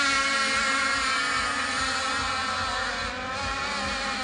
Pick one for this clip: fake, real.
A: real